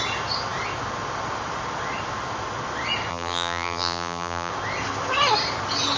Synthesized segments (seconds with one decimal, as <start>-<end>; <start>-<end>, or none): 3.1-4.5